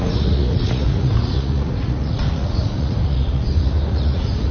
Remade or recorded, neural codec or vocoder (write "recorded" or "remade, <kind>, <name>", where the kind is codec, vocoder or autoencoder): remade, vocoder, Vocos